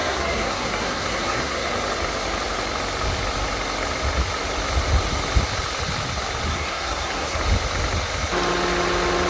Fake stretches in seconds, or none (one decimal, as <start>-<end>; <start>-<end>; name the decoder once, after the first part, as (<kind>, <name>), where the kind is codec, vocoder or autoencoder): 0.0-1.7 (codec, SNAC); 6.5-7.4